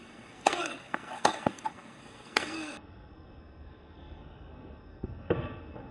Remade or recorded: remade